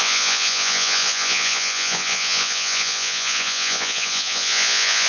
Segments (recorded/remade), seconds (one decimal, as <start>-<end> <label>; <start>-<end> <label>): 0.0-5.1 remade